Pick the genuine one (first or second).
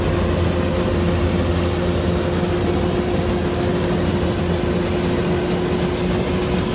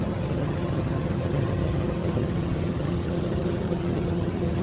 first